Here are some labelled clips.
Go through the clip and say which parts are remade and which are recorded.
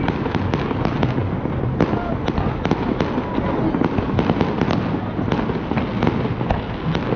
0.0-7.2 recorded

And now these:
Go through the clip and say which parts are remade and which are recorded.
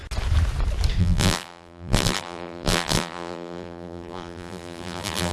0.0-1.0 recorded; 1.0-5.3 remade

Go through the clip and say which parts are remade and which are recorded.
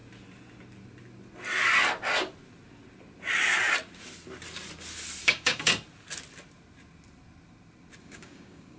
0.0-5.2 recorded; 5.2-5.7 remade; 5.7-8.0 recorded; 8.0-8.8 remade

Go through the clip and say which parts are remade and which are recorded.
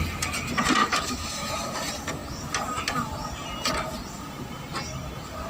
0.0-0.8 recorded; 0.8-1.5 remade; 1.5-5.5 recorded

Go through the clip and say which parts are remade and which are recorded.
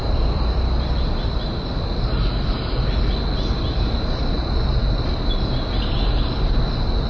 0.0-7.1 recorded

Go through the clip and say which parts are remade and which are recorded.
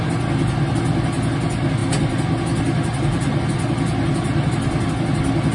0.0-5.5 recorded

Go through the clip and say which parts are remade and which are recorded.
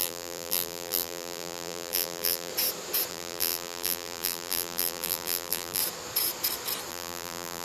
0.0-2.5 remade; 2.5-3.1 recorded; 3.1-5.8 remade; 5.8-6.9 recorded; 6.9-7.6 remade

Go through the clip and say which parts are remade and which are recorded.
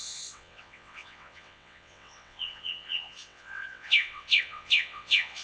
0.0-5.4 remade